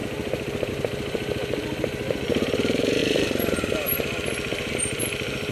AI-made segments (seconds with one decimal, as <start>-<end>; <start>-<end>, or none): 0.0-5.5